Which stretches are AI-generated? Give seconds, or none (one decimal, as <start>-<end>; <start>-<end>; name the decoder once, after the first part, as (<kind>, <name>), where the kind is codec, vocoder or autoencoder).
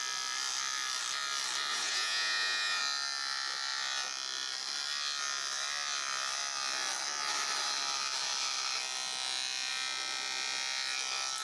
1.7-2.8 (vocoder, Vocos)